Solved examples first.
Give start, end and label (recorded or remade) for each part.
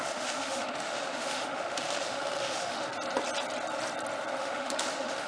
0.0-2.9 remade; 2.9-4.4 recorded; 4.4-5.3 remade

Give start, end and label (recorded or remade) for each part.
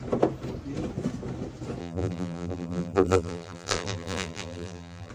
0.0-1.8 recorded; 1.8-5.1 remade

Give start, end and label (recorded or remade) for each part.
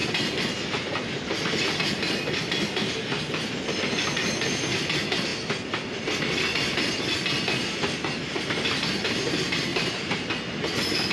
0.0-9.7 recorded; 9.7-10.3 remade; 10.3-11.1 recorded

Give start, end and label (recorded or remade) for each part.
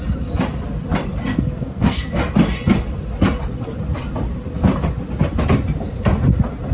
0.0-1.3 recorded; 1.3-2.1 remade; 2.1-6.7 recorded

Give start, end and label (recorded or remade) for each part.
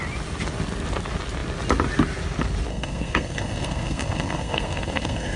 0.0-2.7 recorded; 2.7-5.4 remade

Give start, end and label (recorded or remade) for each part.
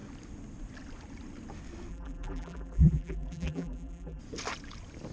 0.0-1.9 recorded; 1.9-4.2 remade; 4.2-5.1 recorded